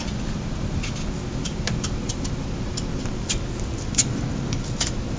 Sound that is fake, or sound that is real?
real